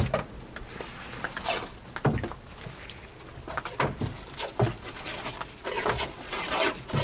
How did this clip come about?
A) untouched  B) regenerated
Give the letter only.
A